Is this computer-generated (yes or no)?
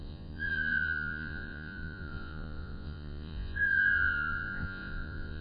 yes